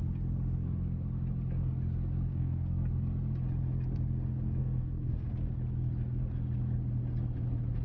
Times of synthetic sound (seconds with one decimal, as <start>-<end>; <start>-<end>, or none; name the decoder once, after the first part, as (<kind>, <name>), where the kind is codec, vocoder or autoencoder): 2.3-2.9 (codec, SNAC); 4.6-5.3